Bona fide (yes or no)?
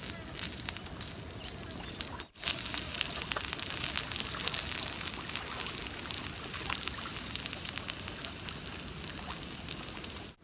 yes